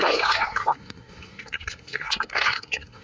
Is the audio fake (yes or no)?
yes